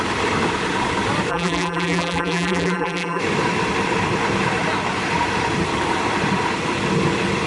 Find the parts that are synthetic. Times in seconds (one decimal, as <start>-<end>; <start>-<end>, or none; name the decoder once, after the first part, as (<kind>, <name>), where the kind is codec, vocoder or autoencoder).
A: 1.3-3.2 (vocoder, BigVGAN v2)